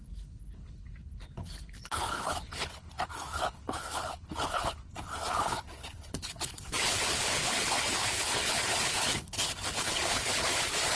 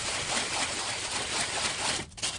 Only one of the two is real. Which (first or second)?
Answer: second